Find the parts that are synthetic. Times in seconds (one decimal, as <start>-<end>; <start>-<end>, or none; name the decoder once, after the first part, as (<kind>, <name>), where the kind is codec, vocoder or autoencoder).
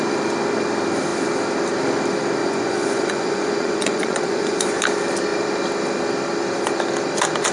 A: 2.4-4.8 (vocoder, Vocos)